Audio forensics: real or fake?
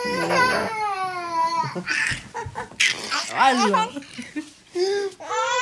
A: real